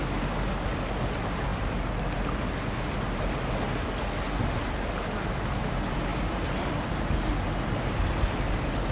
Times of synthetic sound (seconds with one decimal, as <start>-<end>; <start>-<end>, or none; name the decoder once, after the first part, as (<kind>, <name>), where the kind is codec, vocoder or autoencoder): 6.1-7.0 (vocoder, BigVGAN v2)